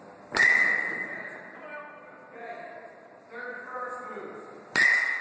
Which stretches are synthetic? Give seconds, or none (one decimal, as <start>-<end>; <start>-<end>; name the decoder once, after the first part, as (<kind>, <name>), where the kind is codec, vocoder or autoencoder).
none